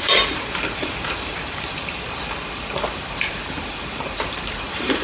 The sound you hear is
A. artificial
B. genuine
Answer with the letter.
A